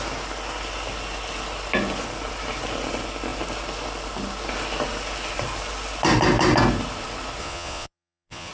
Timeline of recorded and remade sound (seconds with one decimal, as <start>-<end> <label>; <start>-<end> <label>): 0.0-7.4 recorded; 7.4-8.5 remade

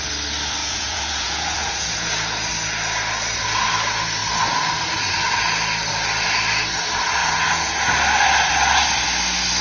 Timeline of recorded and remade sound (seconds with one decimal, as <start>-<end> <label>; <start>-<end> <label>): 0.0-0.6 recorded; 0.6-2.1 remade; 2.1-7.2 recorded; 7.2-7.9 remade; 7.9-9.6 recorded

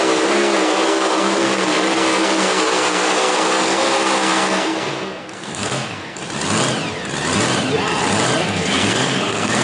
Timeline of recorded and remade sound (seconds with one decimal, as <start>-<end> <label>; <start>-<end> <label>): 0.0-6.2 remade; 6.2-8.4 recorded; 8.4-9.6 remade

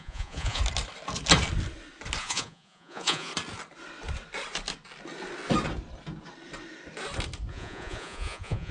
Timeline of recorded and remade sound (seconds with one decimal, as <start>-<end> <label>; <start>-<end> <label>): 0.0-0.6 remade; 0.6-2.2 recorded; 2.2-3.3 remade; 3.3-7.5 recorded; 7.5-8.7 remade

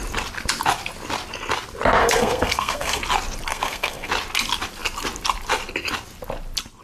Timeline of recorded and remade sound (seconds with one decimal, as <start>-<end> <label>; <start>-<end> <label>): 0.0-2.0 recorded; 2.0-3.0 remade; 3.0-3.5 recorded; 3.5-4.1 remade; 4.1-6.8 recorded